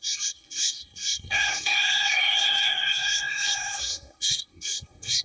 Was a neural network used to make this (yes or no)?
yes